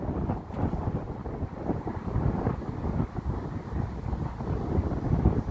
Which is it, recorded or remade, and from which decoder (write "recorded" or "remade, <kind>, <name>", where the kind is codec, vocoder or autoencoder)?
recorded